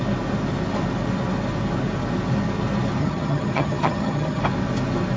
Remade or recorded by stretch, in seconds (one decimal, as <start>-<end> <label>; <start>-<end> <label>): 0.0-3.0 recorded; 3.0-4.4 remade; 4.4-5.2 recorded